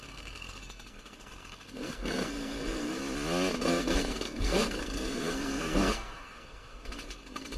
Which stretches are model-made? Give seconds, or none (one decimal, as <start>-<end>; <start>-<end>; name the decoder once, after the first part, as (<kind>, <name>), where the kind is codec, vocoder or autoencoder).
0.0-3.0 (codec, SNAC); 3.6-7.6